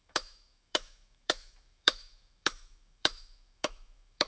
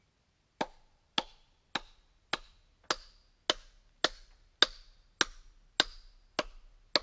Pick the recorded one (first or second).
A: second